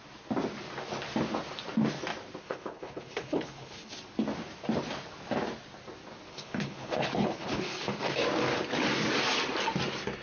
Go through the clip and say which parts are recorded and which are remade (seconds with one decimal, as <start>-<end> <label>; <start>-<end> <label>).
0.0-2.4 recorded; 2.4-3.9 remade; 3.9-6.3 recorded; 6.3-8.1 remade; 8.1-10.2 recorded